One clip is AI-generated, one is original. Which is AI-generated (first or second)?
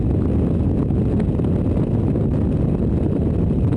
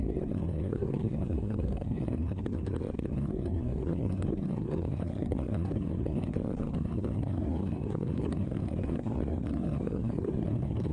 second